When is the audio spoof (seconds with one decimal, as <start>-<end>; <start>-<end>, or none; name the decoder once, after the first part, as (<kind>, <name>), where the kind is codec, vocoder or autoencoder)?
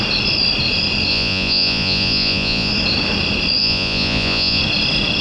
1.1-2.7 (vocoder, Vocos); 3.6-4.6